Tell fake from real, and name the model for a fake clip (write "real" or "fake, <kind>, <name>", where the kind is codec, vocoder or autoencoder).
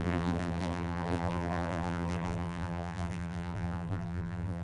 fake, vocoder, BigVGAN v2